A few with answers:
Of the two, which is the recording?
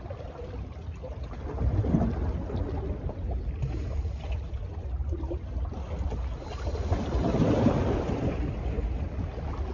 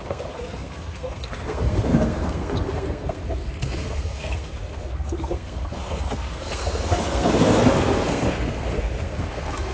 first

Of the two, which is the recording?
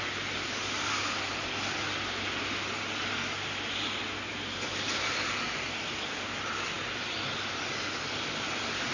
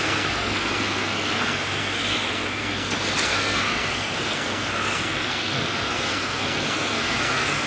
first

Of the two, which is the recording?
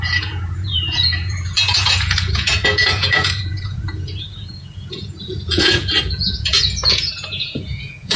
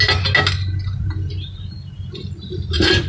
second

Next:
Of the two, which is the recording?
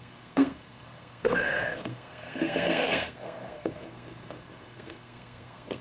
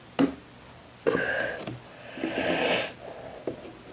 second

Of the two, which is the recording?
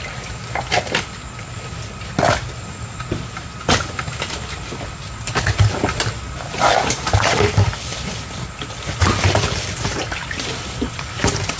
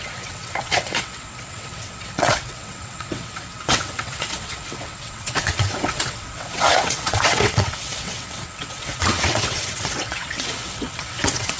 first